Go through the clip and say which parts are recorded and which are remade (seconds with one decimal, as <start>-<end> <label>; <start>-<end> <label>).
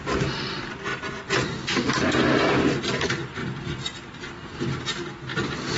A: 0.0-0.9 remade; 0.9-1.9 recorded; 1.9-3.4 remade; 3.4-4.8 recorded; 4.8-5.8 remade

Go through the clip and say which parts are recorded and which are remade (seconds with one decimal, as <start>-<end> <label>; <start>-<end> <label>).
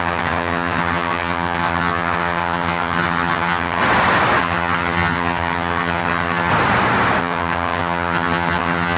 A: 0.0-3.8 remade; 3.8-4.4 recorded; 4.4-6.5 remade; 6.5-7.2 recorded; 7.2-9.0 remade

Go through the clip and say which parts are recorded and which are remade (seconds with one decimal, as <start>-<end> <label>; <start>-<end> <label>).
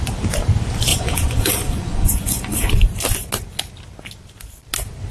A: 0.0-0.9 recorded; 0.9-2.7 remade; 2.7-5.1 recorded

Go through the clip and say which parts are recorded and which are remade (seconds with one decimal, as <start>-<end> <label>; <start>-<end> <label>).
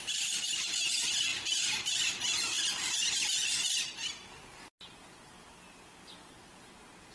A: 0.0-7.1 recorded